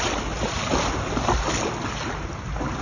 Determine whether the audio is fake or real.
real